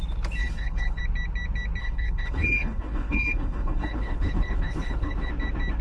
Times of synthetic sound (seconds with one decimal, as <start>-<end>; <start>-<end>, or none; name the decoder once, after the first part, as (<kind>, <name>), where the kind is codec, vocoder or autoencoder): 0.4-1.0 (codec, HILCodec); 1.8-5.3